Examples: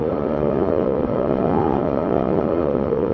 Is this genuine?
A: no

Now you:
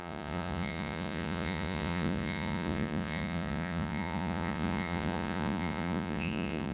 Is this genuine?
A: no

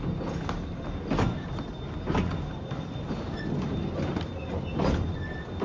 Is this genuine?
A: yes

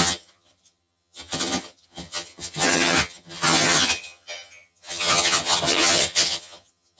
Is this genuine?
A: no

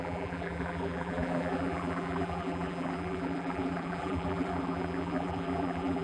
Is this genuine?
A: no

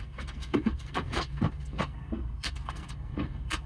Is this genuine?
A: no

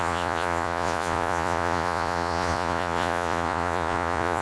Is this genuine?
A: no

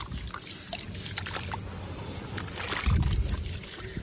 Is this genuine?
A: yes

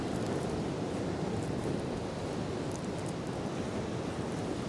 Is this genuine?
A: yes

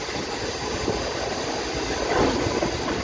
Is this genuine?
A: yes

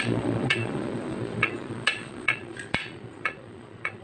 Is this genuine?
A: no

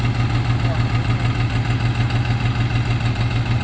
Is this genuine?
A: yes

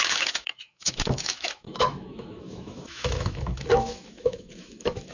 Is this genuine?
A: no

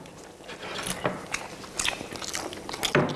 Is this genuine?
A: yes